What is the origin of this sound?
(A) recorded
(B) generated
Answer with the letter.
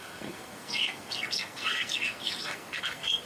B